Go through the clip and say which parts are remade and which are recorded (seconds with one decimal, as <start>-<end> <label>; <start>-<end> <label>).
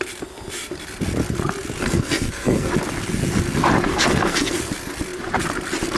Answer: 0.0-1.8 recorded; 1.8-2.7 remade; 2.7-3.9 recorded; 3.9-4.6 remade; 4.6-6.0 recorded